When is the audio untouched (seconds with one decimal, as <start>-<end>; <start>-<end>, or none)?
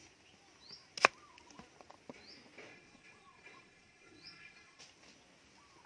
0.0-2.7; 4.8-5.9